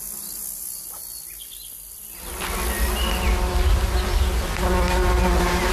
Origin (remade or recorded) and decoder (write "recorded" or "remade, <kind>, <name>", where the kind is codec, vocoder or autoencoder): recorded